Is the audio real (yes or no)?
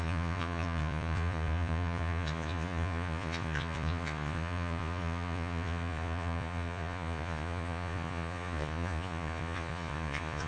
no